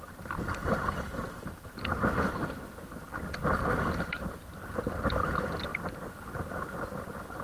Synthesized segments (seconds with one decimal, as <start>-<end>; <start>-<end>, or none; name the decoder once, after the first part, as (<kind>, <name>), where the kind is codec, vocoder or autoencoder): 0.6-1.7 (vocoder, BigVGAN v2); 3.4-4.6